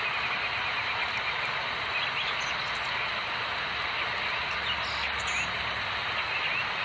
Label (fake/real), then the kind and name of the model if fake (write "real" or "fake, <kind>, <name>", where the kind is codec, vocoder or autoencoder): real